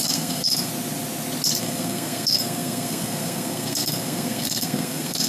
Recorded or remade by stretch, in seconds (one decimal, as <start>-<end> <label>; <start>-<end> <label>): 0.0-0.7 remade; 0.7-1.6 recorded; 1.6-5.3 remade